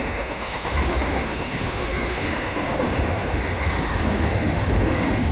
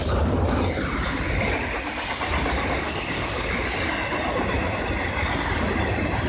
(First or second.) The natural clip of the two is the second